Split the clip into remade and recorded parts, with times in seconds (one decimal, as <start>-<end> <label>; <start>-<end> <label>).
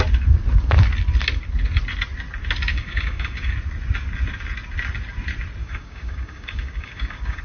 0.0-2.7 recorded; 2.7-3.5 remade; 3.5-5.6 recorded; 5.6-7.4 remade